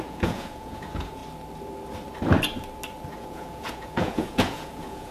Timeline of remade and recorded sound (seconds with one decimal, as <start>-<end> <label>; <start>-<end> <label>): 0.0-1.2 remade; 1.2-3.1 recorded; 3.1-5.1 remade